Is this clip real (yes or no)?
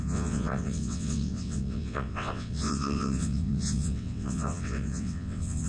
no